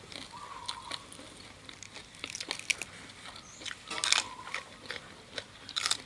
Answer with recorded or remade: recorded